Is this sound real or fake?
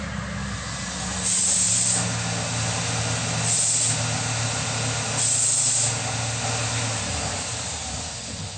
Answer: real